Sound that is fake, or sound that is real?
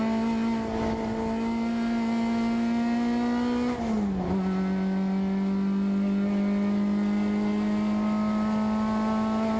real